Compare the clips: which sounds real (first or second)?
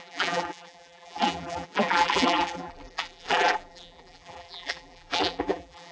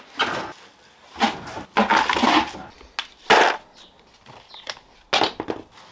second